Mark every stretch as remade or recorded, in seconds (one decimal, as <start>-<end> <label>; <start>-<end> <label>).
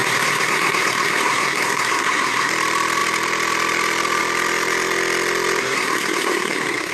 0.0-2.5 remade; 2.5-5.6 recorded; 5.6-6.9 remade